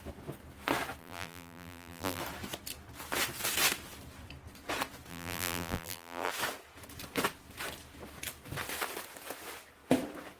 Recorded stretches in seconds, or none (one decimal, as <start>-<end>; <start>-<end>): 0.0-1.0; 2.2-5.1; 6.3-10.4